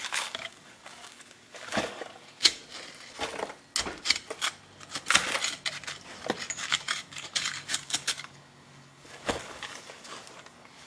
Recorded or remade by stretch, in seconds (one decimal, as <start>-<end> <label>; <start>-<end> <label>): 0.0-2.6 remade; 2.6-6.5 recorded; 6.5-10.9 remade